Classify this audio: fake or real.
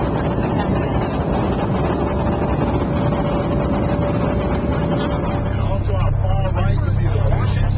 real